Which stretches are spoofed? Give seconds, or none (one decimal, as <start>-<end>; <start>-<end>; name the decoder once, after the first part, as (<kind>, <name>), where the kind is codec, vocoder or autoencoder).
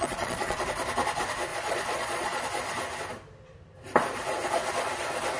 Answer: 0.0-0.6 (vocoder, Vocos); 1.5-2.4